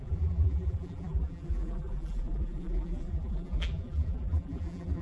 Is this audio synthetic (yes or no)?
yes